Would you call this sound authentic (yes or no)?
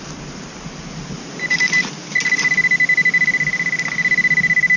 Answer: yes